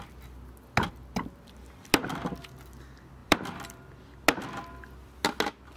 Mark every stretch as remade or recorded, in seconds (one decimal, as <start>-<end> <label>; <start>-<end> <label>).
0.0-3.2 recorded; 3.2-4.0 remade; 4.0-5.8 recorded